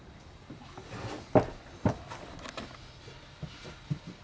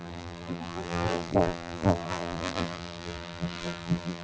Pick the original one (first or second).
first